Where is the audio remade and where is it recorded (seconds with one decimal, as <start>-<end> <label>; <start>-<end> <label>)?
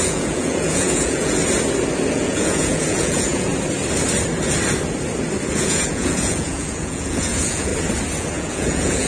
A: 0.0-1.4 remade; 1.4-2.1 recorded; 2.1-3.5 remade; 3.5-5.5 recorded; 5.5-7.7 remade; 7.7-8.2 recorded; 8.2-9.1 remade